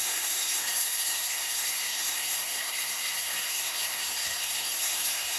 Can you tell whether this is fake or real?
fake